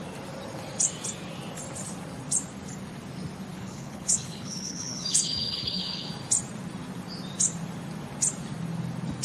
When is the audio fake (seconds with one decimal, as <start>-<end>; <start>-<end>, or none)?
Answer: 3.5-6.1